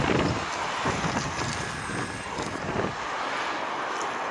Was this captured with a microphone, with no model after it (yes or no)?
yes